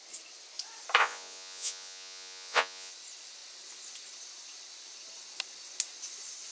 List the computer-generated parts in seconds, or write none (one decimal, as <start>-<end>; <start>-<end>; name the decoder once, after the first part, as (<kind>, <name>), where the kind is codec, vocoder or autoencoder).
1.0-2.9 (vocoder, Vocos)